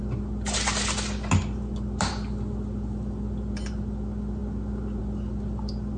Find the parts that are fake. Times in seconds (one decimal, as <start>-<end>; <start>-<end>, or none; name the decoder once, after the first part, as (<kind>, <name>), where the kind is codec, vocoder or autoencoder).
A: none